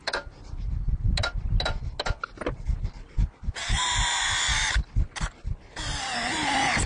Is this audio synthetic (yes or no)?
no